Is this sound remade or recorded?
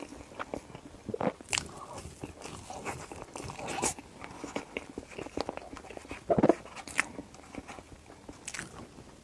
recorded